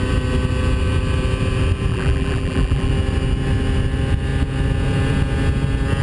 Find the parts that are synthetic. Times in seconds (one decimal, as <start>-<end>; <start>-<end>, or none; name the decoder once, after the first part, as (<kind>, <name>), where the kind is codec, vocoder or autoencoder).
1.9-2.9 (vocoder, BigVGAN v2)

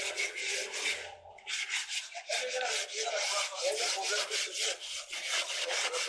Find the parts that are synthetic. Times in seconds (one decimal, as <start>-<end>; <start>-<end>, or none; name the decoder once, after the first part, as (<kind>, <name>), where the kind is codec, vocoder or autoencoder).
0.0-0.4 (vocoder, Vocos); 4.1-6.1

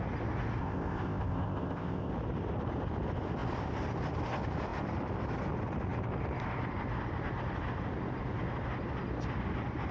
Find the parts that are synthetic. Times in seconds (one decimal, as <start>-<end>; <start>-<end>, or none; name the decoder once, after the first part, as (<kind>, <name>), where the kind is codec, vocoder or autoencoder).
0.6-2.1 (codec, ZipCodec)

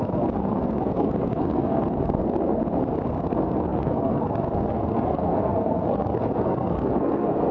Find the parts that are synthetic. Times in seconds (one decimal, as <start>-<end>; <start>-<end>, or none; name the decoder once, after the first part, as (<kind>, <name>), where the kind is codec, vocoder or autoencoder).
0.0-2.6 (codec, SNAC); 3.2-7.5